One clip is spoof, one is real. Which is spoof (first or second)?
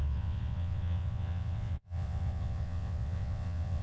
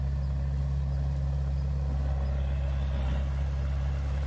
first